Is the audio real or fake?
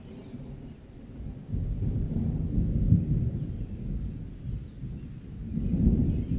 real